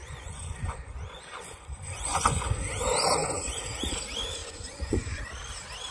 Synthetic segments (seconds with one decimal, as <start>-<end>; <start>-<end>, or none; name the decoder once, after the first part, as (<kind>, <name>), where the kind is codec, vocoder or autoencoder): 0.0-2.4 (vocoder, Vocos); 3.2-3.7; 4.4-5.2